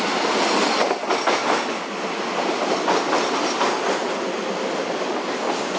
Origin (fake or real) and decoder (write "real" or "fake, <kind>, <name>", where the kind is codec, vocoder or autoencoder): real